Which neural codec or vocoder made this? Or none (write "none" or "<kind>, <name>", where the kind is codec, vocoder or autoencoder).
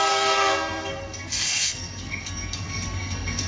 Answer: codec, SNAC